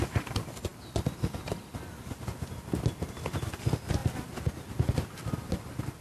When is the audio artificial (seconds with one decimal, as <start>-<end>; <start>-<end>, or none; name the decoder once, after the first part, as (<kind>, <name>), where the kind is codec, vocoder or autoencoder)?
none